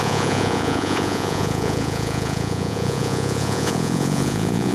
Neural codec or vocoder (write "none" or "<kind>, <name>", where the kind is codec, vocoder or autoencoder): vocoder, Vocos